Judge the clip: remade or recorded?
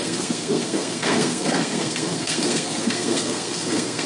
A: remade